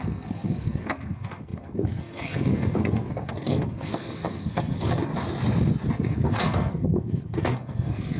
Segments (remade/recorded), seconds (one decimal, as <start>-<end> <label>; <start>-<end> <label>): 0.0-5.1 remade; 5.1-5.9 recorded; 5.9-8.2 remade